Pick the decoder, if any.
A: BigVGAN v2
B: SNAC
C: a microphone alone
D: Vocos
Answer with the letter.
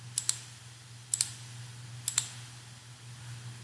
C